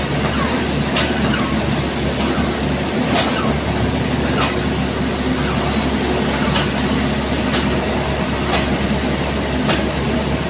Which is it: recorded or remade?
recorded